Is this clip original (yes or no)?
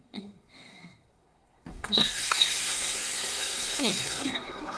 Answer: no